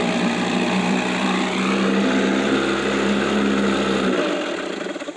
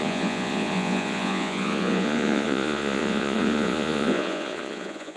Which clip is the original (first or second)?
first